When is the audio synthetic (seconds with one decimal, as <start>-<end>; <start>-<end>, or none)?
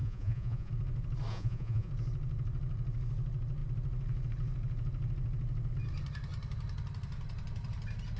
0.0-0.7; 1.3-1.9